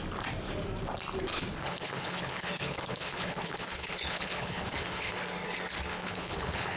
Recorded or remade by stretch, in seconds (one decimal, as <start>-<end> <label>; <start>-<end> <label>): 0.0-1.3 recorded; 1.3-5.1 remade; 5.1-5.9 recorded; 5.9-6.8 remade